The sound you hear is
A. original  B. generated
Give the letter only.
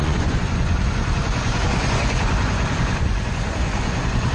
B